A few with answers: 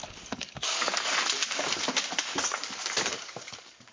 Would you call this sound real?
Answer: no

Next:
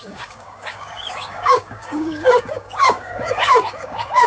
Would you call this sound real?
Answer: no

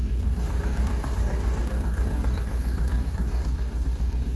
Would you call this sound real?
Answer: no